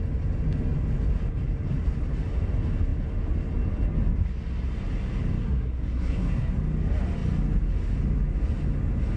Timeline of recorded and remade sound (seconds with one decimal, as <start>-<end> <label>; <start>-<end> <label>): 0.0-5.4 recorded; 5.4-6.6 remade; 6.6-9.2 recorded